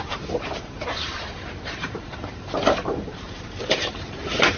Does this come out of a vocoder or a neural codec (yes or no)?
yes